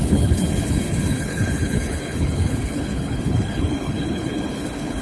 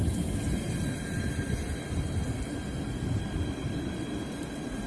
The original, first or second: second